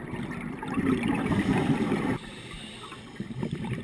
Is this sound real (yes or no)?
yes